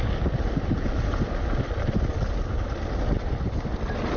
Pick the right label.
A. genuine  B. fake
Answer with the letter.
A